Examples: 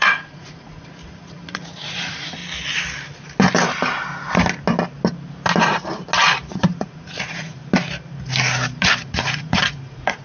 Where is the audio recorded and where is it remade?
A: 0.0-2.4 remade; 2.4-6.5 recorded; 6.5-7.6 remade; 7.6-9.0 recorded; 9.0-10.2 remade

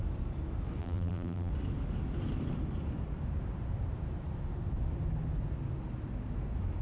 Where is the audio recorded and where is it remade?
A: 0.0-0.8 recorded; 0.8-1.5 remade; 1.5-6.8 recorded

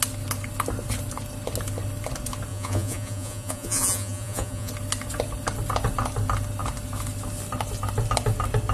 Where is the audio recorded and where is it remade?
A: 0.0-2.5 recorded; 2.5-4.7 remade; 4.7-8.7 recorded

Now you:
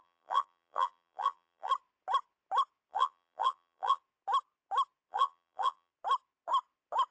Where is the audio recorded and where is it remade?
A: 0.0-1.7 remade; 1.7-2.9 recorded; 2.9-4.0 remade; 4.0-5.1 recorded; 5.1-5.9 remade; 5.9-7.1 recorded

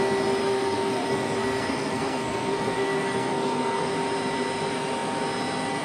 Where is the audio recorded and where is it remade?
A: 0.0-0.4 recorded; 0.4-3.9 remade; 3.9-5.8 recorded

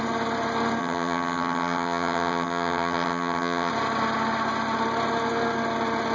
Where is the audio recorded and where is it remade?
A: 0.0-0.8 recorded; 0.8-3.7 remade; 3.7-6.1 recorded